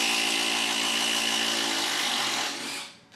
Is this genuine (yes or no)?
yes